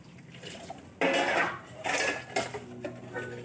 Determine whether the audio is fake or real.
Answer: real